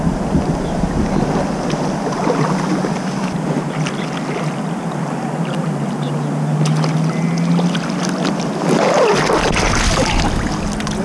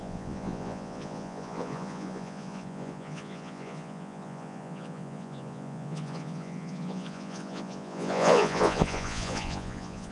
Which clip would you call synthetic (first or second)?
second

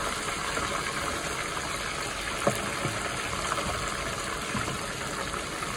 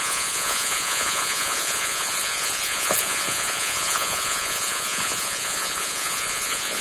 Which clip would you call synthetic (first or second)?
second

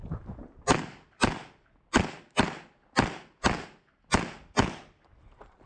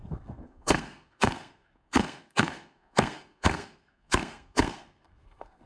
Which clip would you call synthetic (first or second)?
second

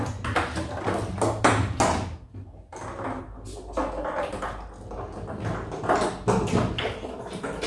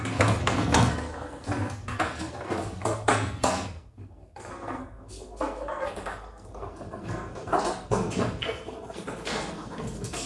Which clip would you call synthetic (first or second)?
second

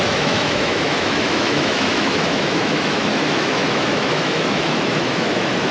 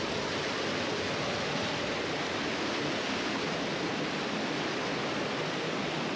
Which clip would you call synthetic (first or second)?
first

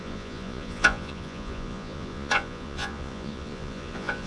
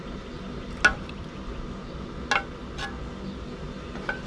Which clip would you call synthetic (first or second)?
first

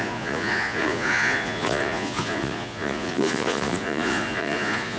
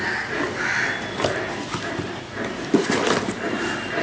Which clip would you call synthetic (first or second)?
first